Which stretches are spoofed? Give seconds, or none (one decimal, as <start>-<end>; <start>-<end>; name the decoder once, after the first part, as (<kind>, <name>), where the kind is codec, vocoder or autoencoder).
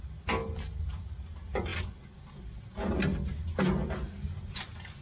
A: none